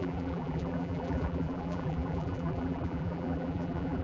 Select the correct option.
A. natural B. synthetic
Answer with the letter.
B